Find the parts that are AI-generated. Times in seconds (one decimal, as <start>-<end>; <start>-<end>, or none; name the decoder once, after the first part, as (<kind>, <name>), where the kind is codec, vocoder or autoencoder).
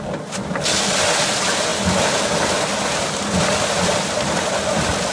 none